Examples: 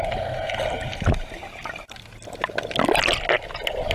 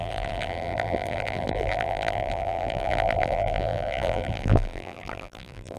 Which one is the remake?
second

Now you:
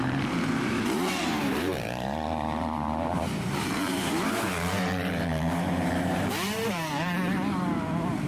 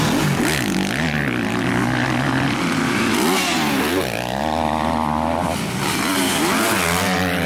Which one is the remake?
first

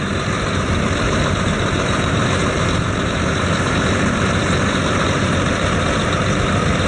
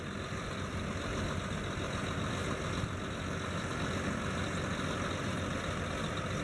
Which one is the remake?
first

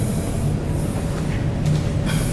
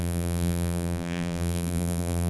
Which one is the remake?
second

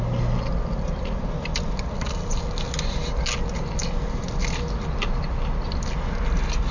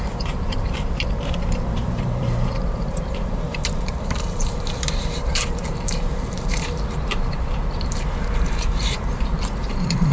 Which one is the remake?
second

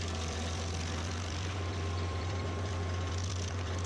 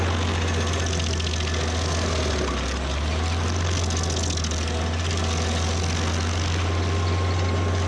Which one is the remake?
first